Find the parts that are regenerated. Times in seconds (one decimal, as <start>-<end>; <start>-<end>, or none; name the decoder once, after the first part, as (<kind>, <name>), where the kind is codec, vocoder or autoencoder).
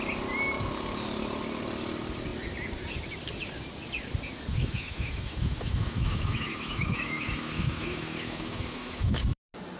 4.5-9.2 (autoencoder, DAC-VAE)